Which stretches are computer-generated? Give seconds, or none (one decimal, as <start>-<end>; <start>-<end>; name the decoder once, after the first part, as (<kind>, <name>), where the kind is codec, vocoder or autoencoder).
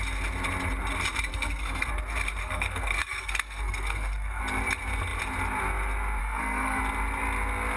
1.3-1.9 (codec, SNAC); 2.4-4.4; 6.2-6.8